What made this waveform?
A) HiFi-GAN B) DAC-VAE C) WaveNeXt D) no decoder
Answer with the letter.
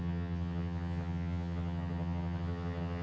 A